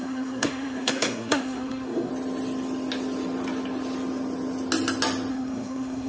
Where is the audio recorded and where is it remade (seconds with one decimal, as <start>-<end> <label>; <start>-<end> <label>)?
0.0-2.1 remade; 2.1-5.3 recorded; 5.3-6.1 remade